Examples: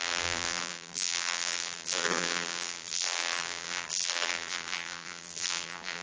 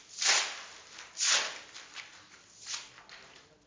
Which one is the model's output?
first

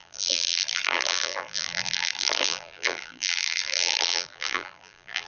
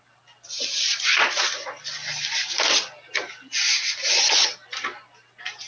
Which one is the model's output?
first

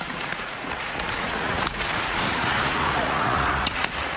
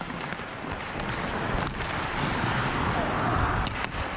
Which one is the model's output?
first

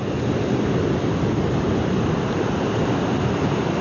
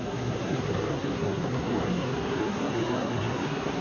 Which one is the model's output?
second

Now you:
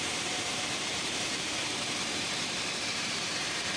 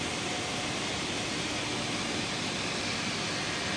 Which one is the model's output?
first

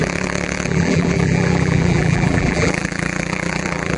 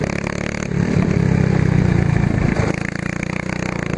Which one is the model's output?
first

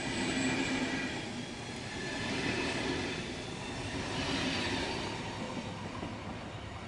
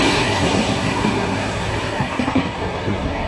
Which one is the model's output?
second